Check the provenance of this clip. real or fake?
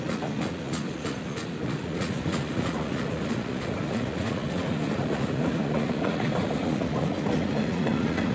fake